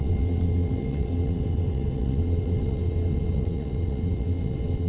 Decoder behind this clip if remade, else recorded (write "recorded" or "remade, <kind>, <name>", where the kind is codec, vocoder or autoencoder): remade, vocoder, WaveNeXt